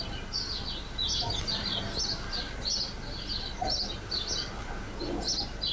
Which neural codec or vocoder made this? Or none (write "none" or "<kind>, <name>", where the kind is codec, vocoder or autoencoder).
none